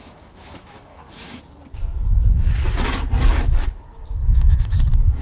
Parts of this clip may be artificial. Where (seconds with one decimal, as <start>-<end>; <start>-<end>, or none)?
0.0-1.4; 4.2-4.8